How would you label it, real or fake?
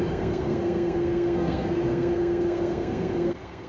fake